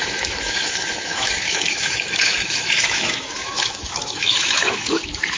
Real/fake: fake